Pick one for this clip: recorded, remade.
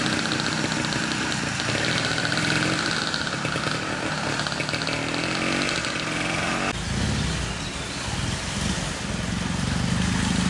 recorded